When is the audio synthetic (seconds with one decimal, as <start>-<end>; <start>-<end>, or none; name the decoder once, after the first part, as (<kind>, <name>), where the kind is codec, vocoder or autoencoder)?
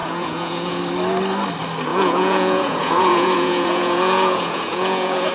0.0-0.8 (vocoder, Vocos); 1.9-5.3